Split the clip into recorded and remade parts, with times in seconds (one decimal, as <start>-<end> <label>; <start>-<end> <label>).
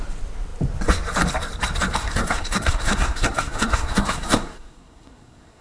0.0-2.0 recorded; 2.0-5.6 remade